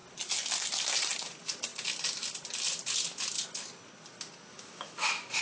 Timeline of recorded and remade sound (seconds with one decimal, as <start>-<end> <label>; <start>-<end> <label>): 0.0-4.5 recorded; 4.5-5.4 remade